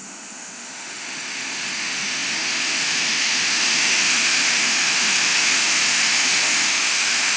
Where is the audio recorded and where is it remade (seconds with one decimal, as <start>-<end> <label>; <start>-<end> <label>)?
0.0-7.4 remade